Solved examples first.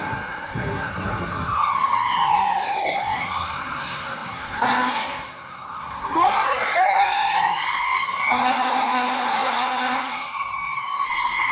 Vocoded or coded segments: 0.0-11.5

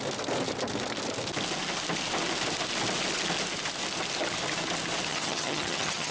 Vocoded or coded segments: 5.1-6.1

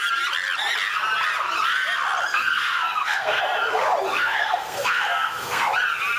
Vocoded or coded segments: 2.3-3.4; 4.1-5.7

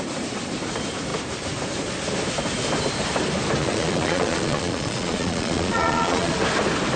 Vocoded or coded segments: 3.6-6.3

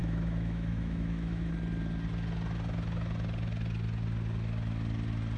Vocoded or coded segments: 0.0-1.5

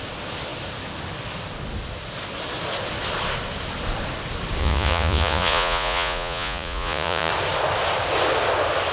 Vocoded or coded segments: 4.6-7.3

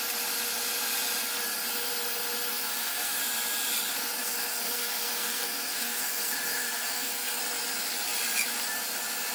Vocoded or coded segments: 2.5-3.2; 4.2-7.4

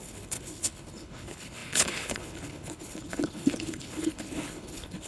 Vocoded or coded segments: 0.0-5.1